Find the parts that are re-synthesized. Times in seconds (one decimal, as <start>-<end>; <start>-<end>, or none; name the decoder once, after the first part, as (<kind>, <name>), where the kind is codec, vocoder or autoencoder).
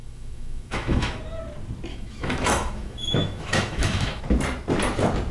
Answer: 0.0-1.2 (autoencoder, DAC-VAE); 1.9-4.2